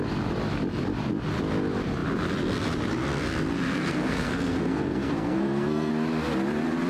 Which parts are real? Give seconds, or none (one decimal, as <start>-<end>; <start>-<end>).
0.0-3.7; 5.9-6.9